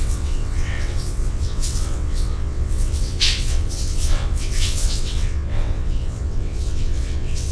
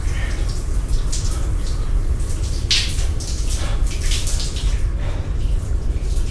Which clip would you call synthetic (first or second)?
first